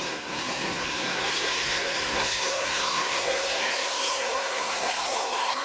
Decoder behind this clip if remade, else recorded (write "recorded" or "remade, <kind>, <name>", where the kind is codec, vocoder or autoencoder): remade, codec, SNAC